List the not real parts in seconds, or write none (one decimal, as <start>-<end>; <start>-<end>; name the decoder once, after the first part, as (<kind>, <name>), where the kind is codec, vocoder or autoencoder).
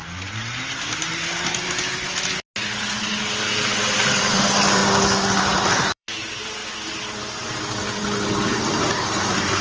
4.2-4.8 (vocoder, BigVGAN v2); 5.4-6.6; 8.5-9.6